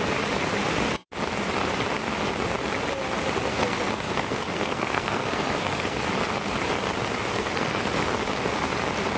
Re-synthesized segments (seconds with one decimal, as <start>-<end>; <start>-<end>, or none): 3.5-6.0; 7.3-7.8